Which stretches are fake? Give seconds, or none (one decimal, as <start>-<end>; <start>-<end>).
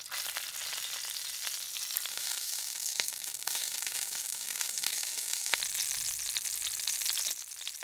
2.1-5.6